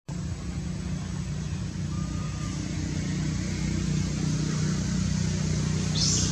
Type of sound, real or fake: real